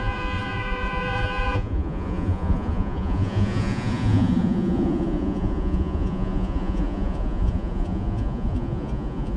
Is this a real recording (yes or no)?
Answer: no